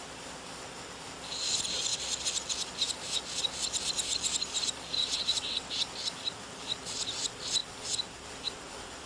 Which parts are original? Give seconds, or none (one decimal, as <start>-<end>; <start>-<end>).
0.0-5.0; 5.7-9.1